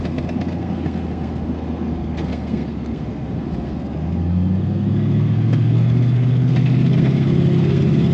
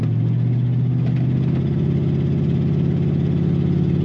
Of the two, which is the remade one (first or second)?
first